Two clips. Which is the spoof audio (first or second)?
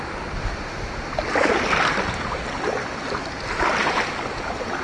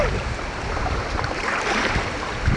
second